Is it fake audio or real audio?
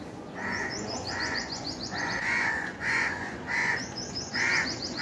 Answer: fake